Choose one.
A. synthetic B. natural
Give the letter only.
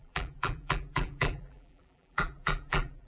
A